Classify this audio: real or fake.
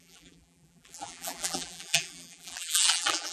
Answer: fake